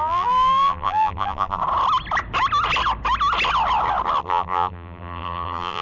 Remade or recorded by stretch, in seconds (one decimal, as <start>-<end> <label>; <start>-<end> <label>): 0.0-1.6 remade; 1.6-4.2 recorded; 4.2-5.8 remade